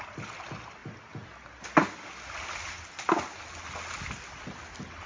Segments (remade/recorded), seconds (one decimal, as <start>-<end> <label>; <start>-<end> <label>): 0.0-5.1 recorded